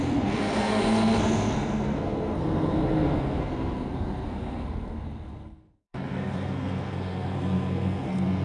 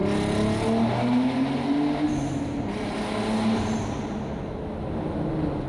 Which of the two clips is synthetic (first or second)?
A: first